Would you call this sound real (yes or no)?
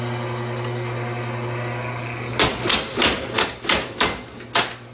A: yes